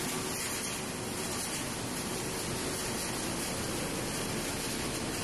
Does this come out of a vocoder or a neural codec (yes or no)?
no